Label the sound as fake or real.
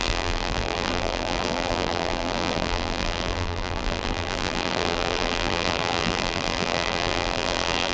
fake